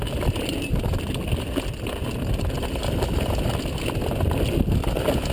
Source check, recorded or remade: recorded